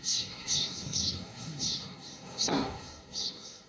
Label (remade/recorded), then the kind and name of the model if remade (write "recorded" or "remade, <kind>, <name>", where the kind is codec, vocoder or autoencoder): remade, codec, SNAC